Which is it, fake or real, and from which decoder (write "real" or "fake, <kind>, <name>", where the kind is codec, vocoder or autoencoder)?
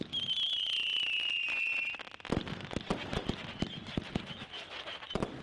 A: real